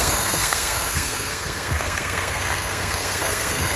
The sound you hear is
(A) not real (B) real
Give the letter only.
A